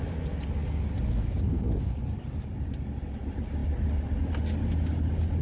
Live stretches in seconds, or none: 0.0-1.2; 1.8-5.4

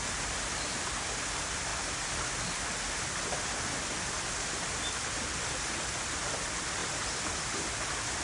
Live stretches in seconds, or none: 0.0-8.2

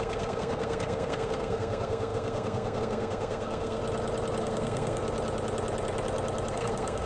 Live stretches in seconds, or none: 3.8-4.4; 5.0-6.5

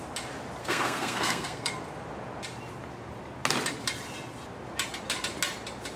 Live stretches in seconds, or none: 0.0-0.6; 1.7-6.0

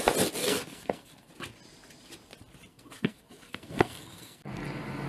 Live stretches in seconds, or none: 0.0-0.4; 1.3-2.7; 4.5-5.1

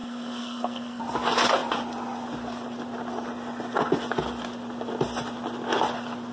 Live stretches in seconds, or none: 1.0-6.3

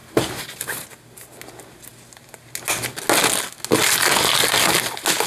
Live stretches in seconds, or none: 0.0-5.3

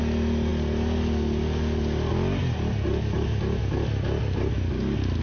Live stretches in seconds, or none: 0.0-5.2